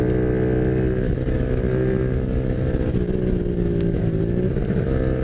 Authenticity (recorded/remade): recorded